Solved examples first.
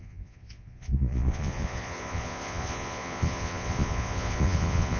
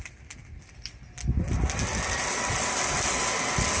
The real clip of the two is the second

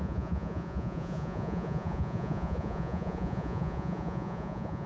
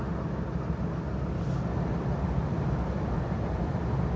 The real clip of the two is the second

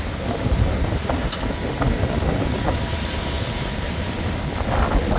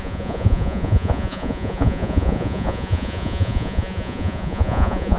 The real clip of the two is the first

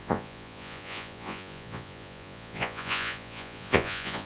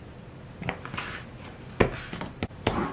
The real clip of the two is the second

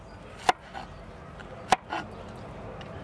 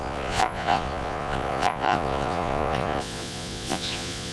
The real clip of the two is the first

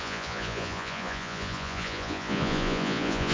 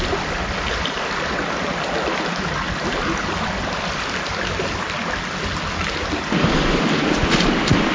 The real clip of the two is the second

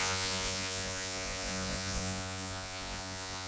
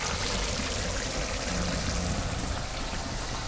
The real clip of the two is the second